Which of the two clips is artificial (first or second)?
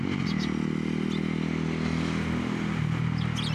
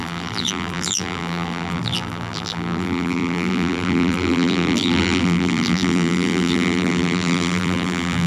second